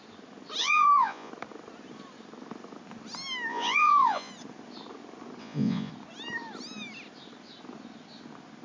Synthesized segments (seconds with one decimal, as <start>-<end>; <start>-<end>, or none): 0.6-1.3; 3.5-4.3; 5.4-5.9